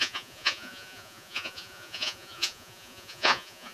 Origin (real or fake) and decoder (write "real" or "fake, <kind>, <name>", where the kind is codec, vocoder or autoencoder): fake, vocoder, Vocos